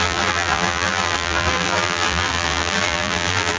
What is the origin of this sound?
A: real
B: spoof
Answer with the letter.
B